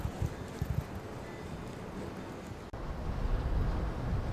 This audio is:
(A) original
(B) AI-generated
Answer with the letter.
A